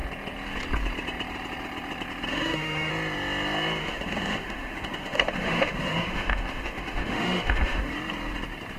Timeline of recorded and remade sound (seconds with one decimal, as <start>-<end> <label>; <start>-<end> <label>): 0.0-2.3 recorded; 2.3-2.9 remade; 2.9-3.8 recorded; 3.8-7.9 remade; 7.9-8.8 recorded